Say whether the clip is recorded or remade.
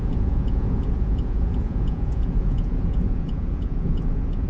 remade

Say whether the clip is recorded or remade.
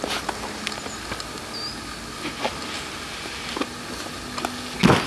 recorded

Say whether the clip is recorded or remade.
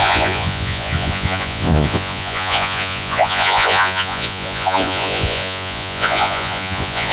remade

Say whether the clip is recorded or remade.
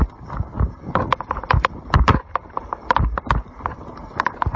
recorded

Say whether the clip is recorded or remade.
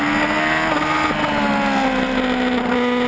recorded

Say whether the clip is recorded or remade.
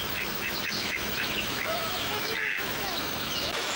remade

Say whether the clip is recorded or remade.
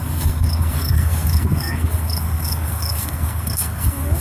remade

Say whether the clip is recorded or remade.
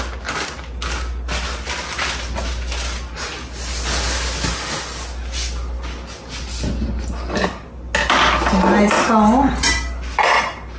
recorded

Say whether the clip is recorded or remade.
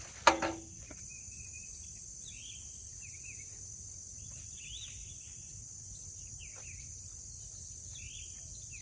recorded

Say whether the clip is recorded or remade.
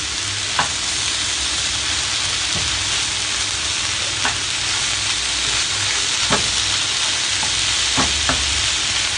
recorded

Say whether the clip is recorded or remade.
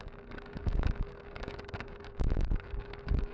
remade